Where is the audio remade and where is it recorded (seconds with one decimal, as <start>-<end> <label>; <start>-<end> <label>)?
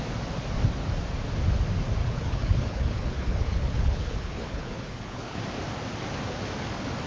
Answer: 0.0-2.0 recorded; 2.0-5.4 remade; 5.4-7.1 recorded